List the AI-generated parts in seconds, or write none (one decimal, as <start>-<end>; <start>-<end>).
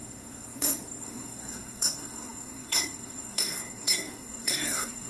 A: 0.0-5.1